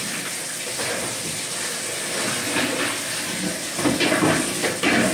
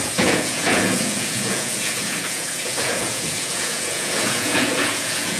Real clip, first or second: first